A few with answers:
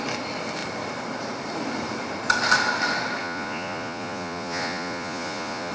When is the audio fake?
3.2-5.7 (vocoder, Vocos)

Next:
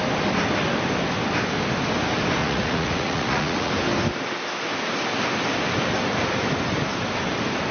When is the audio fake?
2.4-3.7 (vocoder, Vocos)

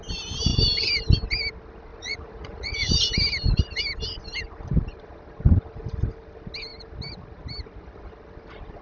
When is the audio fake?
1.9-2.9 (vocoder, Vocos)

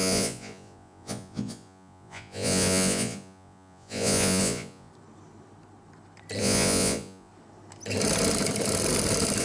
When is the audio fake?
0.0-4.9 (vocoder, Vocos); 6.4-7.3